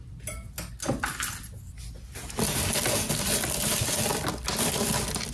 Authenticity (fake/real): real